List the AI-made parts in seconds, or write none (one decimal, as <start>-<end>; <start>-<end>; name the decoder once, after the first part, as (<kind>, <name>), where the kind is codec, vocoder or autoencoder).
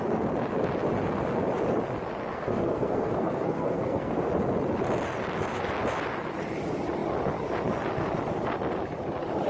2.2-4.3 (codec, SNAC)